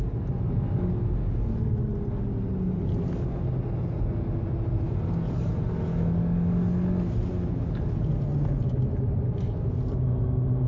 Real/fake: real